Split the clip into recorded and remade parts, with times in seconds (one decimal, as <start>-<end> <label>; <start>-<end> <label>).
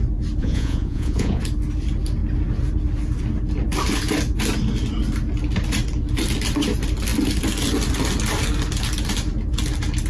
0.0-0.4 recorded; 0.4-1.4 remade; 1.4-10.1 recorded